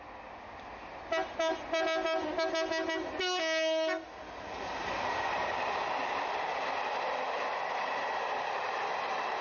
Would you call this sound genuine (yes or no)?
yes